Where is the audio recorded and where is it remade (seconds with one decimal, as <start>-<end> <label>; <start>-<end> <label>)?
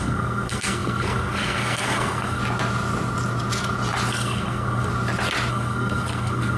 0.0-2.4 remade; 2.4-4.1 recorded; 4.1-4.9 remade; 4.9-5.5 recorded; 5.5-6.6 remade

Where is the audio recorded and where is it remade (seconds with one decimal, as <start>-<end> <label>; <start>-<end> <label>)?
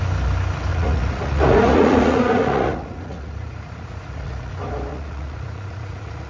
0.0-0.7 recorded; 0.7-4.5 remade; 4.5-4.9 recorded; 4.9-6.3 remade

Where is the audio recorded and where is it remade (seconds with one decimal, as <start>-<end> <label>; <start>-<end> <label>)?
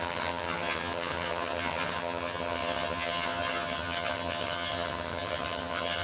0.0-6.0 remade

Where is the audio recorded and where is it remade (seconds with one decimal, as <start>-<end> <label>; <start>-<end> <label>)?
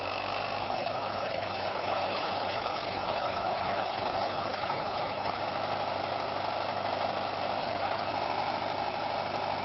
0.0-0.6 recorded; 0.6-5.4 remade; 5.4-7.6 recorded; 7.6-8.1 remade; 8.1-9.6 recorded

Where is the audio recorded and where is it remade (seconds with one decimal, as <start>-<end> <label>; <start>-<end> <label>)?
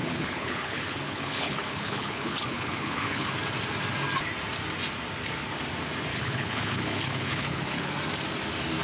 0.0-3.3 remade; 3.3-6.1 recorded; 6.1-7.9 remade; 7.9-8.8 recorded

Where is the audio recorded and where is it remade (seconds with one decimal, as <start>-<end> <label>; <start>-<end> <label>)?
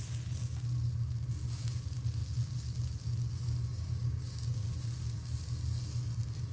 0.0-3.7 recorded; 3.7-4.6 remade; 4.6-6.5 recorded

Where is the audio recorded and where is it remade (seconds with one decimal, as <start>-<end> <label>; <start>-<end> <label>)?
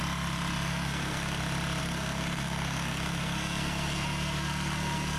0.0-0.7 recorded; 0.7-1.4 remade; 1.4-1.8 recorded; 1.8-5.2 remade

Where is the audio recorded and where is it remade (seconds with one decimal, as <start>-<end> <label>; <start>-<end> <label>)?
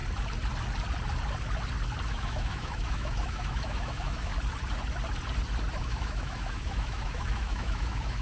0.0-2.1 recorded; 2.1-4.3 remade; 4.3-5.8 recorded; 5.8-8.2 remade